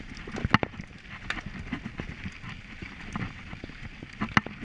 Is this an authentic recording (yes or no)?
yes